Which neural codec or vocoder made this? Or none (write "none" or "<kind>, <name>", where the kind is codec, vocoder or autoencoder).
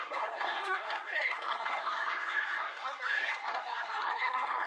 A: codec, SNAC